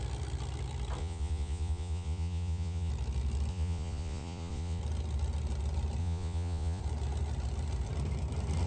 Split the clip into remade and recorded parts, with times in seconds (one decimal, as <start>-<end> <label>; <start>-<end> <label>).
0.0-1.0 recorded; 1.0-2.9 remade; 2.9-3.5 recorded; 3.5-4.8 remade; 4.8-6.0 recorded; 6.0-6.8 remade; 6.8-8.7 recorded